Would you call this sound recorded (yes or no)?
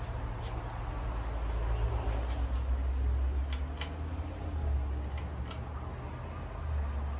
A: yes